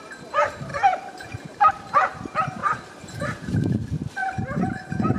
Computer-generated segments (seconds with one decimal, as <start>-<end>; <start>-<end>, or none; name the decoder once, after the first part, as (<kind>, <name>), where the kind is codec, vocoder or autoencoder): 0.7-1.7 (vocoder, BigVGAN v2); 2.6-3.6